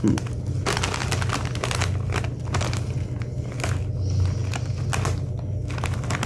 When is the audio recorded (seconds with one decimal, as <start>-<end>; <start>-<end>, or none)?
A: 0.0-6.3